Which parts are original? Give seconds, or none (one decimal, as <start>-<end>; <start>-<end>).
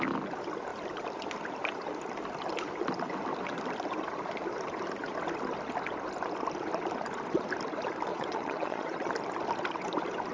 0.0-8.1; 9.1-10.3